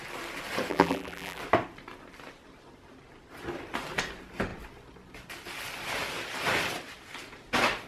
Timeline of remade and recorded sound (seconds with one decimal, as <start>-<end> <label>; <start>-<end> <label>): 0.0-0.7 recorded; 0.7-1.4 remade; 1.4-7.9 recorded